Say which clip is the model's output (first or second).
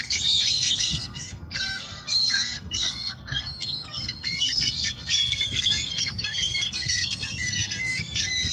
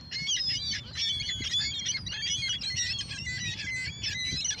first